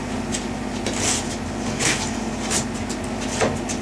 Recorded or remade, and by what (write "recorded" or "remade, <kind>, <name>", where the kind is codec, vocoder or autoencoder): recorded